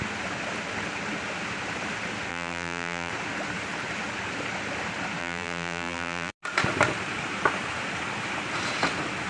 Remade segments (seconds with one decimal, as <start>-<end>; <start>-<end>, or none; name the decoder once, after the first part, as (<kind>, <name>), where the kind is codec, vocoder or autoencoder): 2.3-3.1 (vocoder, BigVGAN v2); 5.2-6.3